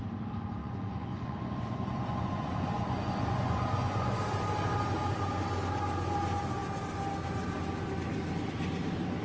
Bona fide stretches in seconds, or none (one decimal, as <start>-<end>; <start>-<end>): 0.0-0.6; 4.2-9.2